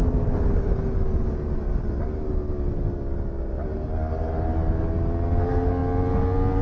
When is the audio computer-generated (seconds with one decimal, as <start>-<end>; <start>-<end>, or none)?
none